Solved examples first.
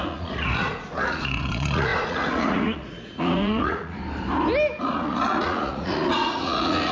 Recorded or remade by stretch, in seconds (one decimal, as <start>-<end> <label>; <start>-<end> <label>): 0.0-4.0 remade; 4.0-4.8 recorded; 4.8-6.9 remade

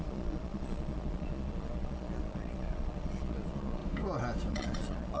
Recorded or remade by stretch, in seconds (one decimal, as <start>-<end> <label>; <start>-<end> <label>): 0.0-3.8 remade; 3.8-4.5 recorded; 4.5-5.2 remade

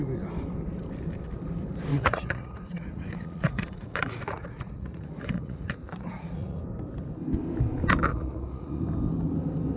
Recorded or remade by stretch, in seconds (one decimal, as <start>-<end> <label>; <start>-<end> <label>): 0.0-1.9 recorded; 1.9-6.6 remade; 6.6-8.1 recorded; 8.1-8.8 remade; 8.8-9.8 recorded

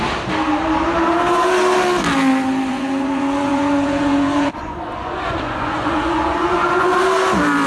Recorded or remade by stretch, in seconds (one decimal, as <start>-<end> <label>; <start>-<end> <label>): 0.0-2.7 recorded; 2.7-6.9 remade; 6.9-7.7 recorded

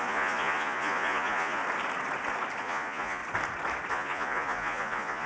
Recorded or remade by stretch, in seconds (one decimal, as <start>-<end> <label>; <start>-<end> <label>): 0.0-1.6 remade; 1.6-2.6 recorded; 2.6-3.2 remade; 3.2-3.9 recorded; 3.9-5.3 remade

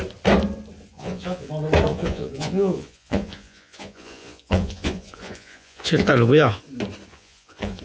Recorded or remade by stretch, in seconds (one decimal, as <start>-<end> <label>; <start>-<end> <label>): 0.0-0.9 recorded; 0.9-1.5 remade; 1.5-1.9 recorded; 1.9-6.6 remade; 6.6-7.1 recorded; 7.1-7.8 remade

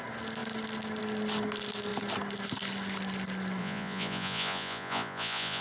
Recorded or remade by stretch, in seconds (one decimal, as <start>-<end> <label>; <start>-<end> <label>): 0.0-3.6 recorded; 3.6-5.6 remade

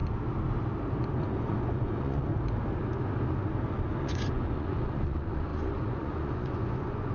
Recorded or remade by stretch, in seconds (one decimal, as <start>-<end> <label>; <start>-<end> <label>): 0.0-1.2 recorded; 1.2-2.3 remade; 2.3-4.0 recorded; 4.0-7.1 remade